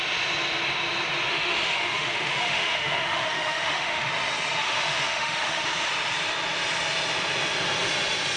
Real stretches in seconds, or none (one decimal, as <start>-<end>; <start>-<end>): 0.0-1.3; 4.1-4.6; 5.9-8.4